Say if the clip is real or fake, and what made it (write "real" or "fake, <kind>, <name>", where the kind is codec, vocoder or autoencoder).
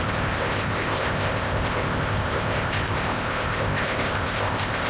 fake, codec, ZipCodec